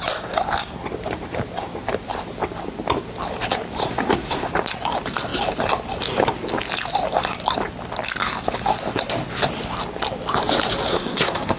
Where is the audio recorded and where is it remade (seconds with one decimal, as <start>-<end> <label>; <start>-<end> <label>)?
0.0-3.8 recorded; 3.8-4.5 remade; 4.5-10.9 recorded; 10.9-11.6 remade